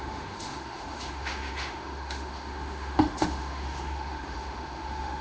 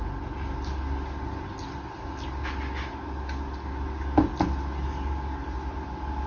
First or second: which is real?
second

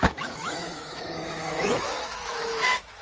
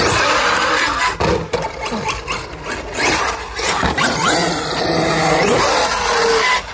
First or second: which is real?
second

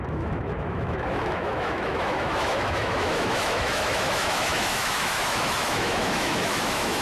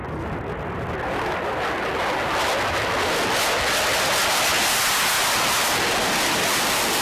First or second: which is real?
second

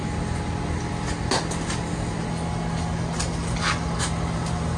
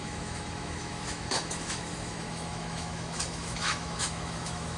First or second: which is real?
first